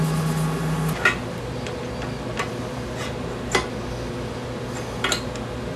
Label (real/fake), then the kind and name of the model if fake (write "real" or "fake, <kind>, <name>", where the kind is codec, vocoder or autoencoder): real